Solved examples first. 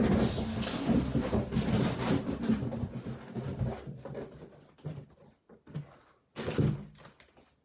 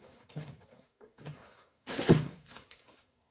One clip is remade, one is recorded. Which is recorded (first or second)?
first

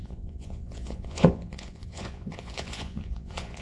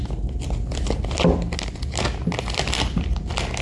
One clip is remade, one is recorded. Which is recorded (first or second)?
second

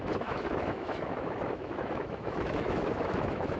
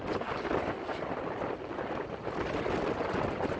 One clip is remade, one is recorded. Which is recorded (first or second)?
second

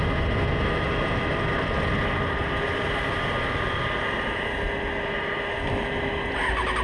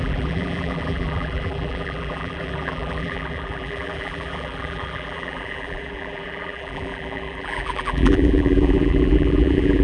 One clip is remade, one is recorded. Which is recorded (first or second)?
first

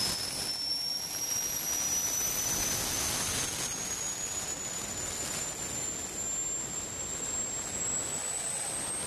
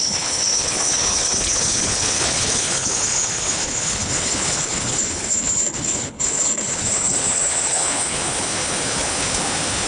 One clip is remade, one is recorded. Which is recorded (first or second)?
first